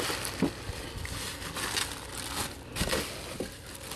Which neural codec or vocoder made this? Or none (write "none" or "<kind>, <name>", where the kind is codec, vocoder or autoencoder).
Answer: none